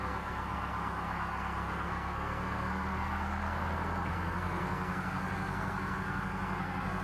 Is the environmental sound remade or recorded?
remade